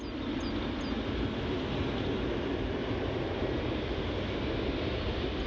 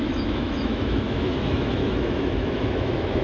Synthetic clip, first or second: second